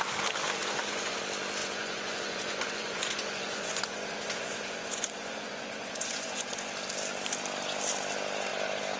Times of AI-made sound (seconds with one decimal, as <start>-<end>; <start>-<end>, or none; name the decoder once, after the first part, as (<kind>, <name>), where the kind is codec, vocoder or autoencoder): 0.6-1.2 (vocoder, Vocos); 1.6-6.7